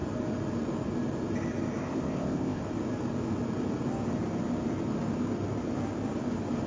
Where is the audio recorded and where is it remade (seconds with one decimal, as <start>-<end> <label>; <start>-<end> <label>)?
0.0-1.8 recorded; 1.8-2.6 remade; 2.6-6.7 recorded